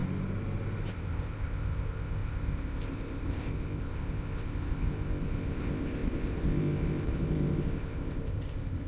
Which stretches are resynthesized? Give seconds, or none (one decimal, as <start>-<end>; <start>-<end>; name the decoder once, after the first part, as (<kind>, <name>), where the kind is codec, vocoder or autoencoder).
0.9-8.9 (codec, ZipCodec)